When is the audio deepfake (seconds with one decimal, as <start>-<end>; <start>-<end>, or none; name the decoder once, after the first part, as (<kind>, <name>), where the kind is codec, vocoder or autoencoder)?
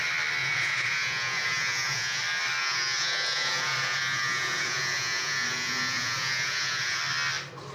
0.4-2.2 (vocoder, Vocos); 2.6-7.0